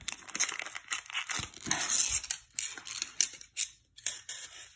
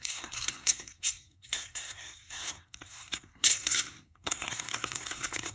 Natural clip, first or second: first